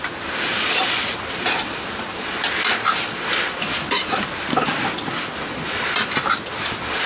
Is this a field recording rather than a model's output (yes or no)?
yes